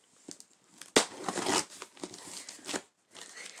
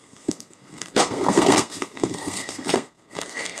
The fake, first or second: second